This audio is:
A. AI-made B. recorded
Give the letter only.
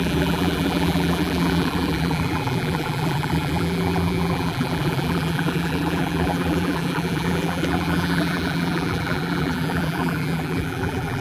A